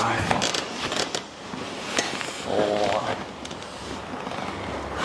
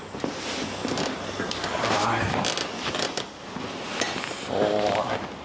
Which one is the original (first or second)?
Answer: second